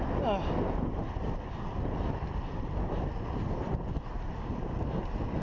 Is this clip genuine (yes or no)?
yes